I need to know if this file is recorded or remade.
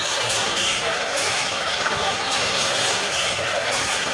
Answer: remade